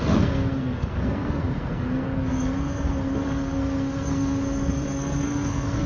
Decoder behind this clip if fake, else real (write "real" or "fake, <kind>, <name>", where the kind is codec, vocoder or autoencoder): fake, codec, SNAC